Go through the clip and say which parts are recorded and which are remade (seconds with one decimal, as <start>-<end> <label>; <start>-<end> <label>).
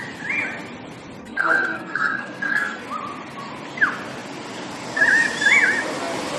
0.0-1.2 recorded; 1.2-2.8 remade; 2.8-6.4 recorded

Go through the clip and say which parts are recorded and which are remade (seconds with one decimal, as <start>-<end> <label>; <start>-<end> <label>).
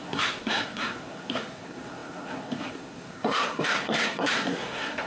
0.0-5.1 remade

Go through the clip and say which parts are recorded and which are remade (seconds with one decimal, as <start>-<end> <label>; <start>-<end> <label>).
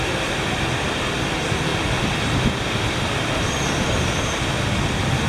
0.0-5.3 recorded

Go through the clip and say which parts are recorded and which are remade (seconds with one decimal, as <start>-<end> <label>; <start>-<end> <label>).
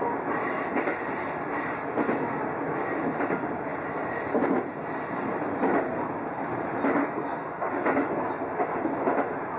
0.0-7.0 recorded; 7.0-7.7 remade; 7.7-9.6 recorded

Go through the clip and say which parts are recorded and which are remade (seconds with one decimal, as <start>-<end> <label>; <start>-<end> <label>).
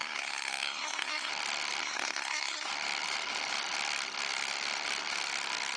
0.0-1.3 remade; 1.3-1.8 recorded; 1.8-2.7 remade; 2.7-5.8 recorded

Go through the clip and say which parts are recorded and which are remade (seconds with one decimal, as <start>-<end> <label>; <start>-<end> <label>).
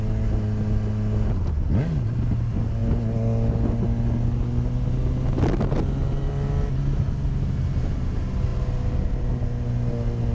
0.0-10.3 recorded